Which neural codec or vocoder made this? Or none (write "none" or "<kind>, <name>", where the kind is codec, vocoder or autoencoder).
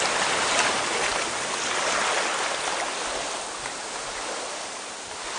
none